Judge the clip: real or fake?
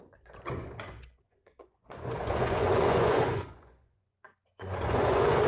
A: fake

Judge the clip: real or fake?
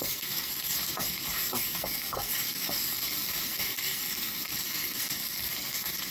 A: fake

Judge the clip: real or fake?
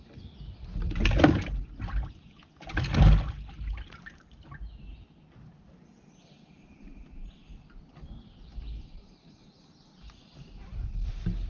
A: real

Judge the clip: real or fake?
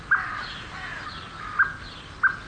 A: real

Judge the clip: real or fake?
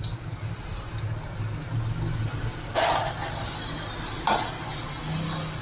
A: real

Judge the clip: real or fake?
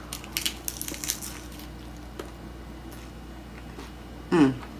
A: real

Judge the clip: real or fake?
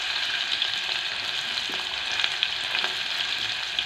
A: real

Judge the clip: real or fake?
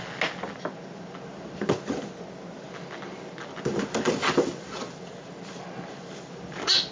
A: real